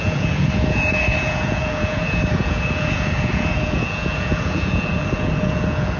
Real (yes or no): no